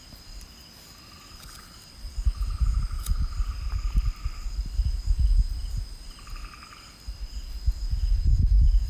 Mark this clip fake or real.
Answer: real